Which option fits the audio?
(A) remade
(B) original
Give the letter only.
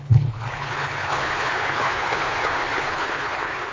A